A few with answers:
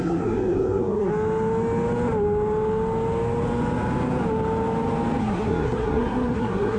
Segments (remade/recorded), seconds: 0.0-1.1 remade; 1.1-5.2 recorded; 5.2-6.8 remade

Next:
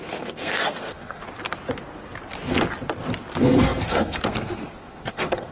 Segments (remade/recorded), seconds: 0.0-1.2 remade; 1.2-3.4 recorded; 3.4-5.5 remade

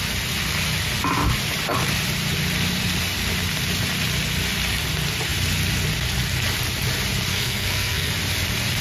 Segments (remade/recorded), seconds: 0.0-7.3 recorded; 7.3-8.1 remade; 8.1-8.8 recorded

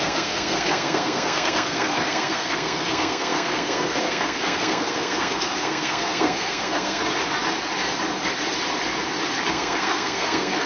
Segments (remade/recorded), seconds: 0.0-7.1 remade; 7.1-9.5 recorded; 9.5-10.7 remade

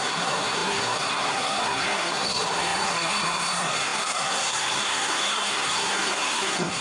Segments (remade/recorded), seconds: 0.0-6.8 remade

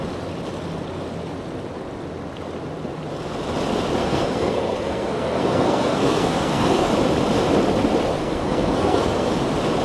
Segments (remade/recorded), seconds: 0.0-4.0 recorded; 4.0-6.9 remade; 6.9-8.2 recorded; 8.2-9.3 remade; 9.3-9.8 recorded

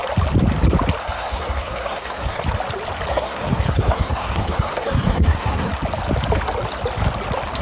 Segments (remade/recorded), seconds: 0.0-1.0 recorded; 1.0-2.4 remade; 2.4-3.1 recorded; 3.1-5.7 remade; 5.7-7.6 recorded